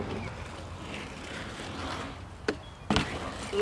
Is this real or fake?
real